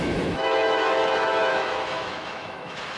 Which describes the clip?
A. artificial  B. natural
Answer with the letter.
A